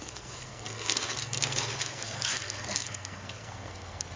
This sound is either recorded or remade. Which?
remade